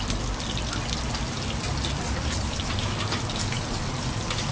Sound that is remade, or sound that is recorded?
recorded